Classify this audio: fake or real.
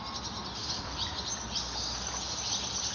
real